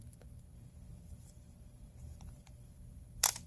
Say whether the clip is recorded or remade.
remade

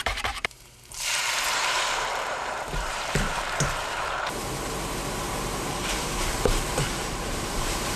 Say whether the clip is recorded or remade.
remade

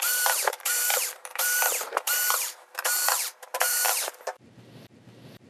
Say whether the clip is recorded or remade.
remade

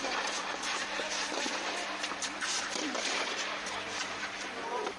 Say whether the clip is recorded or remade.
remade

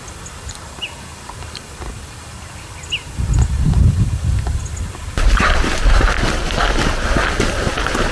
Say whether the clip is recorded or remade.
recorded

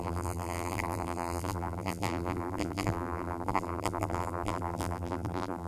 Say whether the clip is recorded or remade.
remade